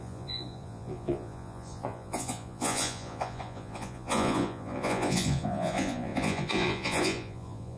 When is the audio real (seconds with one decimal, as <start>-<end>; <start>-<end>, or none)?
none